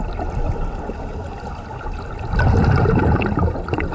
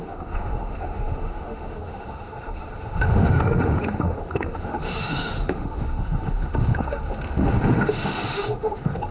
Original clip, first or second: first